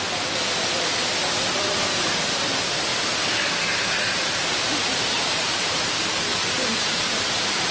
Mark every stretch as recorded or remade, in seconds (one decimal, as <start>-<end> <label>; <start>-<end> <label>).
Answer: 0.0-2.9 recorded; 2.9-7.7 remade